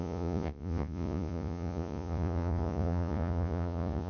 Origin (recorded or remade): remade